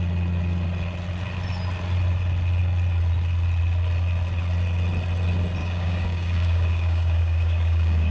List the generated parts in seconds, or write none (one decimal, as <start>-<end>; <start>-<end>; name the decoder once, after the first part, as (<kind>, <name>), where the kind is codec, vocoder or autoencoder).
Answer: 5.6-8.1 (codec, DAC)